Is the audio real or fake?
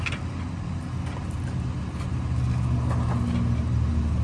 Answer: real